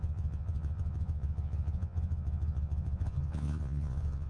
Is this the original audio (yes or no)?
no